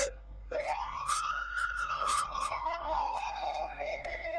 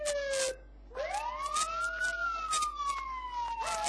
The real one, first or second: second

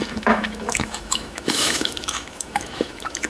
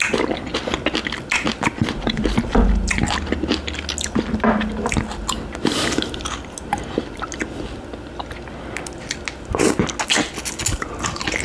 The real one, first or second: second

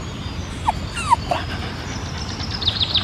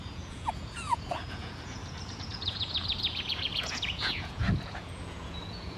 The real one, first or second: first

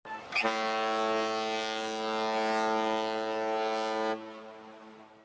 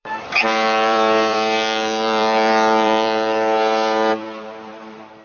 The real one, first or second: first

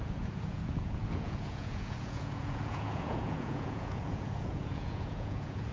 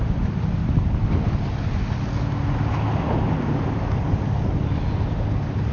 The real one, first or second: second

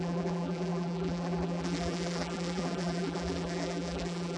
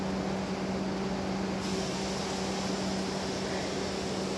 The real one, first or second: second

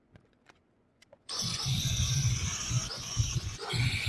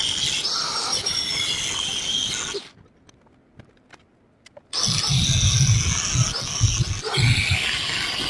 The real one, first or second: second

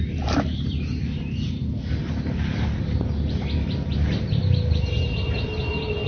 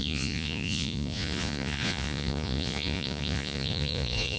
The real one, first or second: first